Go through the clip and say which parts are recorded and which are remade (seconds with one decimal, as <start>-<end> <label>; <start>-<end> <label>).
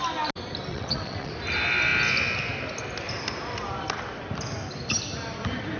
0.0-0.7 recorded; 0.7-1.3 remade; 1.3-5.8 recorded